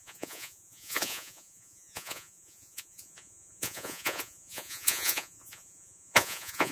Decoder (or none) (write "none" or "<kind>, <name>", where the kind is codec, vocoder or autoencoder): vocoder, Vocos